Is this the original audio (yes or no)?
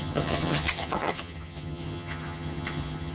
no